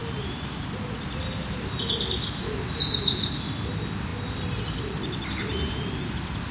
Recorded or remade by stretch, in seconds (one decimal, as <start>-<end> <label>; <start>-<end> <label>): 0.0-6.5 recorded